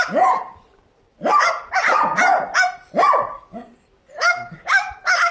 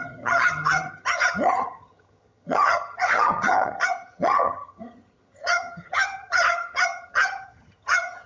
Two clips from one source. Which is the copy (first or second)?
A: second